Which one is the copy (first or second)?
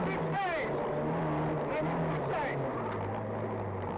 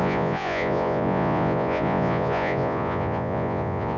second